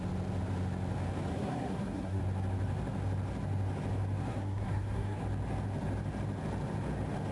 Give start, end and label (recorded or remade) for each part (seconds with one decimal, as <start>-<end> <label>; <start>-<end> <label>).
0.0-1.3 recorded; 1.3-2.2 remade; 2.2-4.3 recorded; 4.3-5.2 remade; 5.2-7.3 recorded